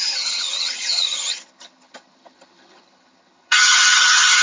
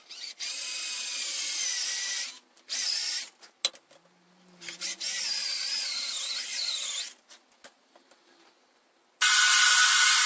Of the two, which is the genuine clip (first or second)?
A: second